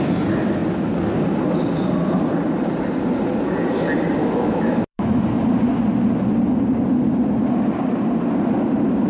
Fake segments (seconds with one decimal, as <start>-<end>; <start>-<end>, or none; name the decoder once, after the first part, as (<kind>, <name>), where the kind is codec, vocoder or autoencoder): 4.2-5.2 (autoencoder, DAC-VAE)